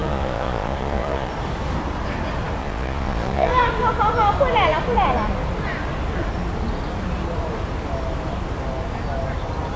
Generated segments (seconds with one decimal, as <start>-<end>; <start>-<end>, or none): 0.0-1.3; 2.6-3.5